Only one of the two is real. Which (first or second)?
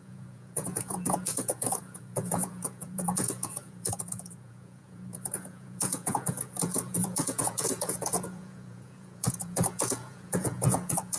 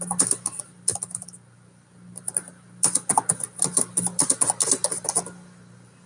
second